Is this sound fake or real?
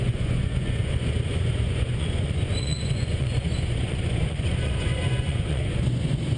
fake